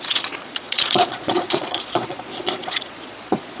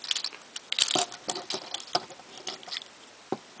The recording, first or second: second